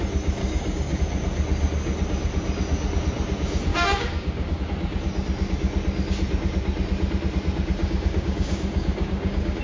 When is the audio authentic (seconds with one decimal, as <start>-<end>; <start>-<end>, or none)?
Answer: 0.0-0.4; 1.0-3.7; 4.6-7.8